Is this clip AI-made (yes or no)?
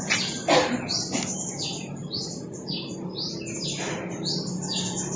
no